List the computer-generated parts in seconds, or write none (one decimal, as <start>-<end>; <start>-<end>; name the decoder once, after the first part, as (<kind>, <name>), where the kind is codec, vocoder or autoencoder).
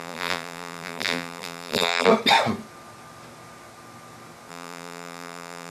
0.0-2.1 (vocoder, BigVGAN v2); 4.5-5.7